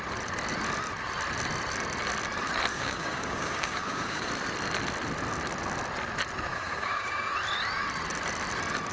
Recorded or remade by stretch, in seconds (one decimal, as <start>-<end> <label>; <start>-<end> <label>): 0.0-2.7 recorded; 2.7-4.3 remade; 4.3-6.5 recorded; 6.5-7.3 remade; 7.3-8.9 recorded